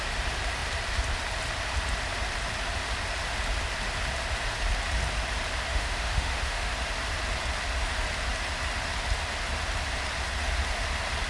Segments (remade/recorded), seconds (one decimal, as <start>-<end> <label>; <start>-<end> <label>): 0.0-5.7 recorded; 5.7-6.7 remade; 6.7-11.3 recorded